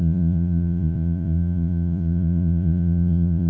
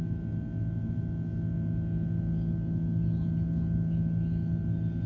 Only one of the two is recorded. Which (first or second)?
second